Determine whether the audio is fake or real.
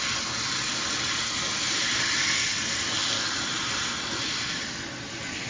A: real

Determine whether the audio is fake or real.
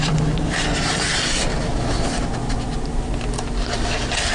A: fake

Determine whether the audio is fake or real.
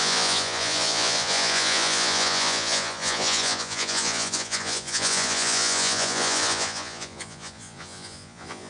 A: fake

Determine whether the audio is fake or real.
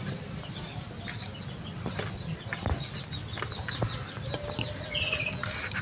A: real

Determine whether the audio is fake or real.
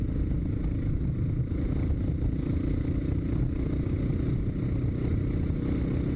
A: real